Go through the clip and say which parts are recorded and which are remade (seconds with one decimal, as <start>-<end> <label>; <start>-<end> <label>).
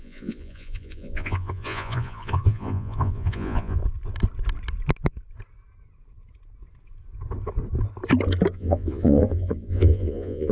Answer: 0.0-3.8 remade; 3.8-8.5 recorded; 8.5-10.5 remade